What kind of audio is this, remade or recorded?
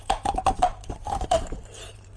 remade